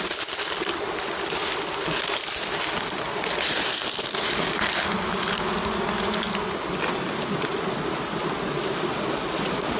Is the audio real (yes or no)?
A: yes